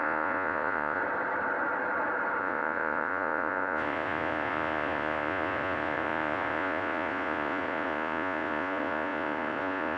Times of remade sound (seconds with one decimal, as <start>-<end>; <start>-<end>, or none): 0.0-1.0; 2.4-10.0